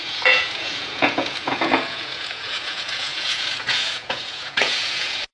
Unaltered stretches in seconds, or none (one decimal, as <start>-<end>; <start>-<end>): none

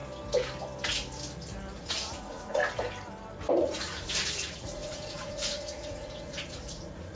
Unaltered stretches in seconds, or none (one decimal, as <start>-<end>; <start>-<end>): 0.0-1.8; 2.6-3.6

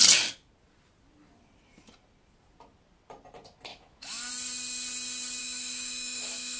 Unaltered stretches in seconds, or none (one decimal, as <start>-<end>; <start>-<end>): 0.0-3.7; 4.3-5.4

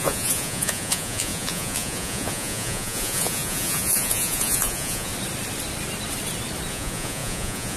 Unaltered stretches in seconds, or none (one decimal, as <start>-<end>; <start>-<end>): 5.1-6.7